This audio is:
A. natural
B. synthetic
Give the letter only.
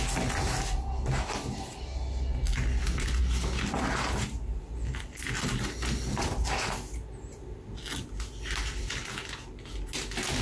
A